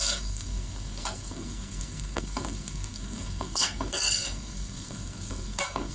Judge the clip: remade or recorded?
remade